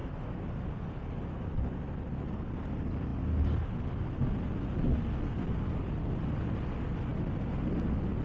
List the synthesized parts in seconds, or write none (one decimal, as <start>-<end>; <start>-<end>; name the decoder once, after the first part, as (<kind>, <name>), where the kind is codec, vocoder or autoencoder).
none